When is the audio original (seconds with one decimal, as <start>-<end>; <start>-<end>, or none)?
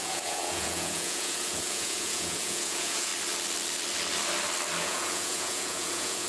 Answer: 3.1-4.8